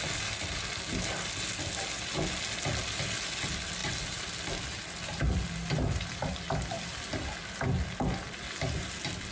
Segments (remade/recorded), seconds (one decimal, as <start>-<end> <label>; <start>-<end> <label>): 0.0-9.3 recorded